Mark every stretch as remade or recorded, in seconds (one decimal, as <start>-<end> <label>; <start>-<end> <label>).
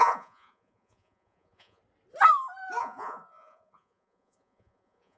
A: 0.0-1.8 remade; 1.8-2.8 recorded; 2.8-5.2 remade